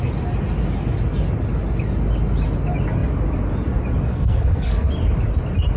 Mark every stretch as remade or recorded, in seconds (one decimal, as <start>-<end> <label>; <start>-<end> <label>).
0.0-4.1 recorded; 4.1-4.9 remade; 4.9-5.8 recorded